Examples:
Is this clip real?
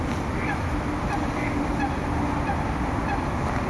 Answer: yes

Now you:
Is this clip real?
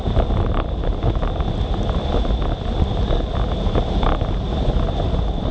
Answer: yes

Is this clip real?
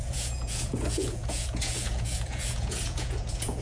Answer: no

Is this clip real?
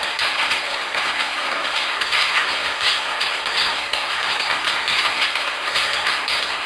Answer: no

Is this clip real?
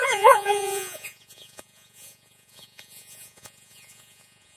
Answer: no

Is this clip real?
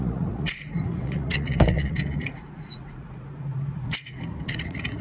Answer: no